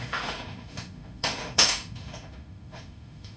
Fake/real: fake